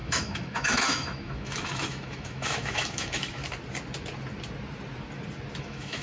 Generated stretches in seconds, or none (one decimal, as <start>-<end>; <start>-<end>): 0.0-3.4; 5.6-6.0